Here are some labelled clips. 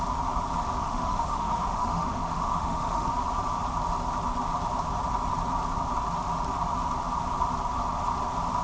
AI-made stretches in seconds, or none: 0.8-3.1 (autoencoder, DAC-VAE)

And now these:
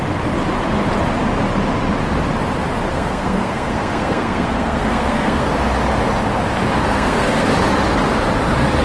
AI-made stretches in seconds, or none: 2.9-5.5 (codec, SNAC); 6.8-7.5

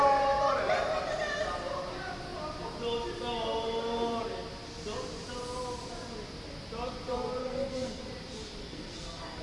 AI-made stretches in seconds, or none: 7.4-8.0 (codec, SNAC); 8.6-9.4

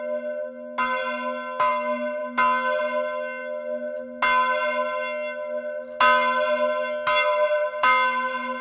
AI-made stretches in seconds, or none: none

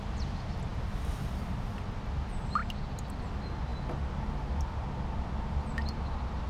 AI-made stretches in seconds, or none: none

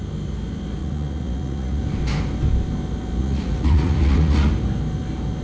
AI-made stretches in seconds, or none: 0.8-1.8 (vocoder, Vocos); 3.2-4.5

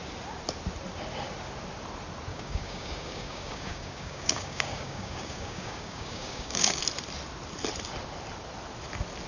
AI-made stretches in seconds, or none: 2.3-6.8 (codec, DAC)

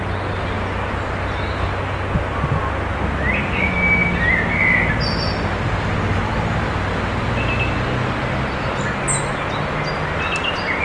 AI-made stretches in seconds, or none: none